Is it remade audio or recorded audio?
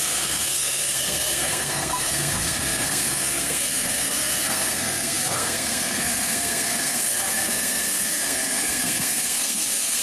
remade